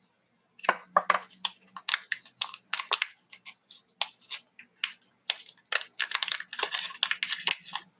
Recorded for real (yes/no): yes